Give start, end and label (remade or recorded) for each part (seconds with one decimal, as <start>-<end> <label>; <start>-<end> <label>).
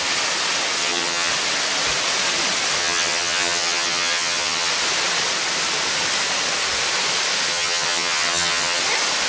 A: 0.0-0.8 recorded; 0.8-1.3 remade; 1.3-2.8 recorded; 2.8-4.7 remade; 4.7-7.5 recorded; 7.5-8.8 remade; 8.8-9.3 recorded